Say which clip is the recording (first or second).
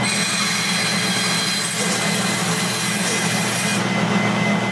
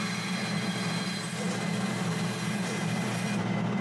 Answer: first